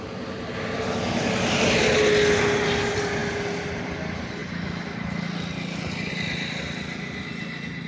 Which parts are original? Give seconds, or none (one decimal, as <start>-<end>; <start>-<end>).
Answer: 0.0-7.9